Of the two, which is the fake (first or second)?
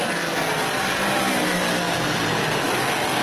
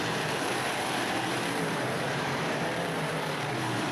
second